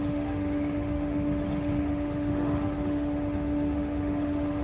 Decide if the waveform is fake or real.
fake